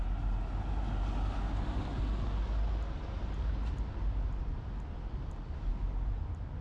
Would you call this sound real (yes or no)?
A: yes